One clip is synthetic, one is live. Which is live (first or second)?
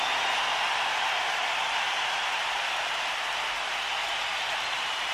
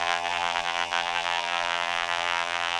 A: first